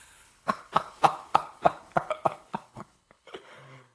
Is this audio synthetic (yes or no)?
yes